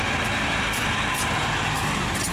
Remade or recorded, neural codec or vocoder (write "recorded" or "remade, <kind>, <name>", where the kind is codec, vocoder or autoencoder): recorded